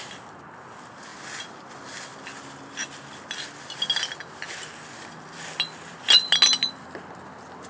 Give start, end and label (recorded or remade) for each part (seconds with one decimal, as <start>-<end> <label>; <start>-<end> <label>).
0.0-7.7 recorded